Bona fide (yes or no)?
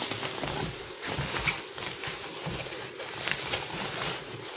yes